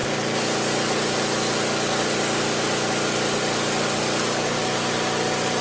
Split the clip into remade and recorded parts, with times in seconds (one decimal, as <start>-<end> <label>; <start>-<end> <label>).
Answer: 0.0-5.6 recorded

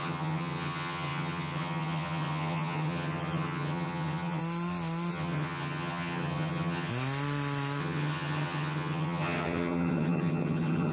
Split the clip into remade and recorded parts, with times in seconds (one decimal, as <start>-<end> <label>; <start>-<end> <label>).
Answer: 0.0-4.4 remade; 4.4-5.1 recorded; 5.1-6.9 remade; 6.9-7.8 recorded; 7.8-10.9 remade

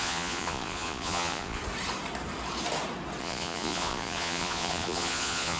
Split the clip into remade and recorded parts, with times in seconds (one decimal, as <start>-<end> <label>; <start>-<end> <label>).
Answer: 0.0-1.6 remade; 1.6-3.2 recorded; 3.2-5.6 remade

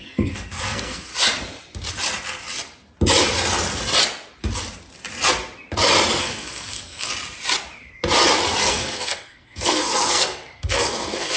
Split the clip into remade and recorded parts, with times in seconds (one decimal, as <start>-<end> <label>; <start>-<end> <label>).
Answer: 0.0-1.1 remade; 1.1-6.2 recorded; 6.2-7.1 remade; 7.1-8.6 recorded; 8.6-11.4 remade